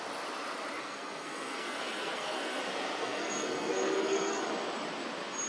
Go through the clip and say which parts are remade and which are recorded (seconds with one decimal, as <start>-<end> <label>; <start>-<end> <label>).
0.0-0.8 recorded; 0.8-2.6 remade; 2.6-3.0 recorded; 3.0-4.4 remade; 4.4-5.5 recorded